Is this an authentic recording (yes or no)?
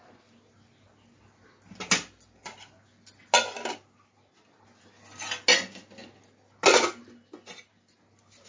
yes